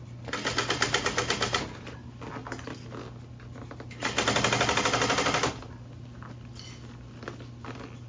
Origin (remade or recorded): recorded